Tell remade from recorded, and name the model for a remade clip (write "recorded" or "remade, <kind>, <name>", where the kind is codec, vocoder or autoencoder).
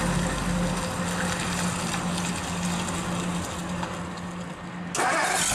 recorded